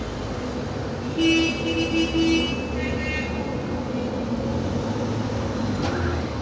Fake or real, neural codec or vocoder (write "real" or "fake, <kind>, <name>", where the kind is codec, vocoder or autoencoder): real